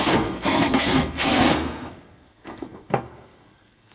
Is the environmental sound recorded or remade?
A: remade